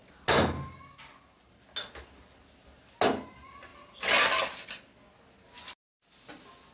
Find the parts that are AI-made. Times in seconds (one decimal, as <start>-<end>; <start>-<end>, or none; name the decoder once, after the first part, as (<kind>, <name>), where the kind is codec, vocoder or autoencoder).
none